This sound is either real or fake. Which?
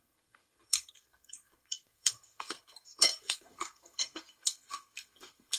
fake